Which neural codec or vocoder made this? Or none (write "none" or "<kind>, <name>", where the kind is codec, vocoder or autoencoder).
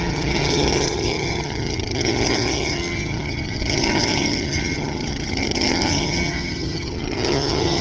vocoder, HiFi-GAN